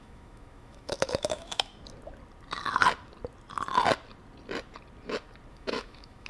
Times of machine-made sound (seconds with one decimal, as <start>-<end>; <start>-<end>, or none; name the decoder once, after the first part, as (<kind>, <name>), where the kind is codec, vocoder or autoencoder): 0.0-1.7 (autoencoder, DAC-VAE); 5.5-6.3